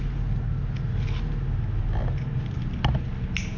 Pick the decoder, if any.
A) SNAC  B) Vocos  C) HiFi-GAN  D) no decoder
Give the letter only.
D